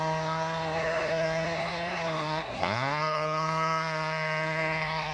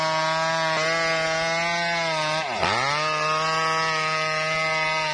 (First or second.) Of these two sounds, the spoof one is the first